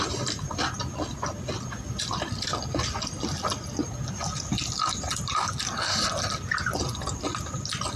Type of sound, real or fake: real